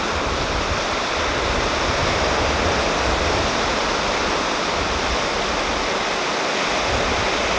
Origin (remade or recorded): recorded